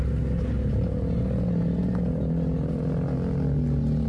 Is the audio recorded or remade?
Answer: recorded